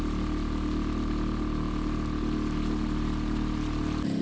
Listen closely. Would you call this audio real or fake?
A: real